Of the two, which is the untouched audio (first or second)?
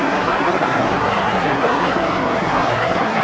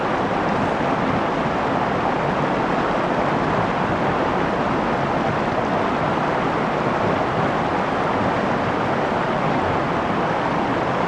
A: second